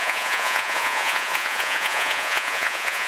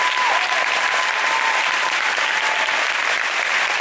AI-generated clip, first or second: first